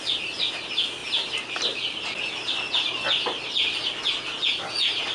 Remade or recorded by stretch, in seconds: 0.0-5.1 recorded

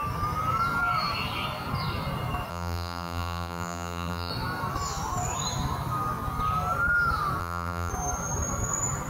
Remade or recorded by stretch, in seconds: 0.0-2.5 recorded; 2.5-4.3 remade; 4.3-7.4 recorded; 7.4-7.9 remade; 7.9-9.1 recorded

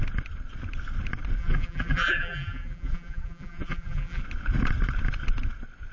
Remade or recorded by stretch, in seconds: 0.0-1.4 recorded; 1.4-4.2 remade; 4.2-5.9 recorded

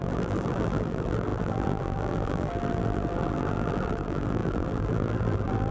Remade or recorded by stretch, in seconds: 0.0-5.7 remade